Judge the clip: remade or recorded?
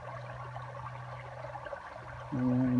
recorded